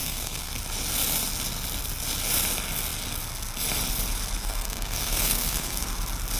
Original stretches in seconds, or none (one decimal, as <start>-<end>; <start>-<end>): 0.5-4.4; 5.9-6.4